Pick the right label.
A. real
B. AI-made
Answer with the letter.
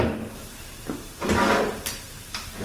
A